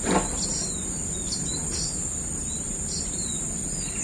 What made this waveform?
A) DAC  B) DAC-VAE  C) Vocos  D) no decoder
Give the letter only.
D